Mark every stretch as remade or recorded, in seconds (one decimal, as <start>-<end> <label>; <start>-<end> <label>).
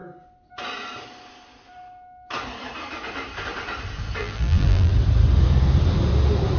0.0-4.2 recorded; 4.2-4.9 remade; 4.9-6.6 recorded